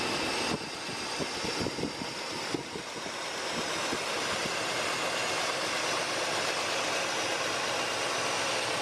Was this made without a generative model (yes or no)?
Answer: yes